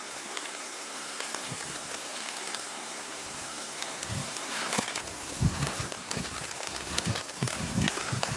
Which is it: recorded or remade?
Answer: remade